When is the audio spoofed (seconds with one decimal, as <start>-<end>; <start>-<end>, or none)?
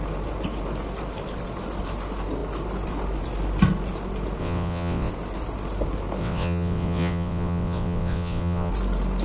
4.4-5.1; 6.2-8.7